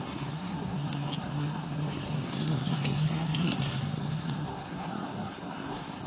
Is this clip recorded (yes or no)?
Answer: no